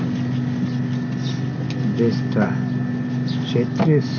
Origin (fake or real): real